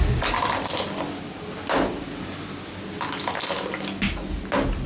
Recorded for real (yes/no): yes